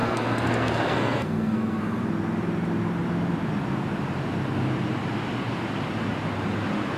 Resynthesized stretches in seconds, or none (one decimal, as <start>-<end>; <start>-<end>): 0.0-2.0